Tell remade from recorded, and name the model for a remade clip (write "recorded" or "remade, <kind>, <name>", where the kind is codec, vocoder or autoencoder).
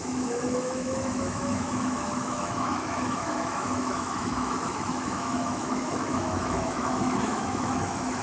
remade, autoencoder, DAC-VAE